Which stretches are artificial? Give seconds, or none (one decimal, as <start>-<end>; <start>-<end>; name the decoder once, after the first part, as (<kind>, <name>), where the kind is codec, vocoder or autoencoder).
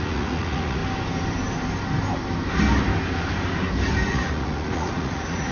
0.0-0.8 (vocoder, Vocos); 4.1-5.5